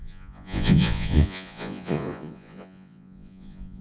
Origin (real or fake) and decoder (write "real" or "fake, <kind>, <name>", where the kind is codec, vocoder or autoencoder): fake, vocoder, Vocos